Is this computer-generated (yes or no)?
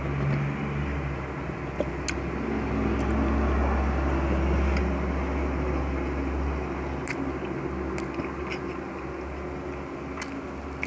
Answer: no